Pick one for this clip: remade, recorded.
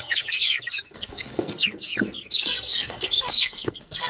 remade